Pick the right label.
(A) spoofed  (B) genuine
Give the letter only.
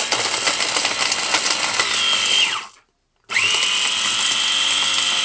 B